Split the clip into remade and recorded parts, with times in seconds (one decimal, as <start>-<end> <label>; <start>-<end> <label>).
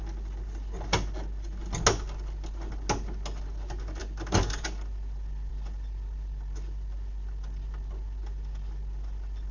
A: 0.0-9.5 recorded